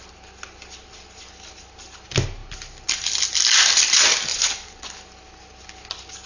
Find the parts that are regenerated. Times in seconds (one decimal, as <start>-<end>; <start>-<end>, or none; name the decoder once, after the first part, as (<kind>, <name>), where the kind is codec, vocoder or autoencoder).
4.3-4.9 (vocoder, Vocos)